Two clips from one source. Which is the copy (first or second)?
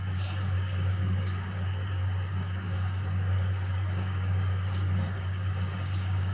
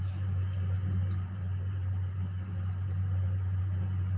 first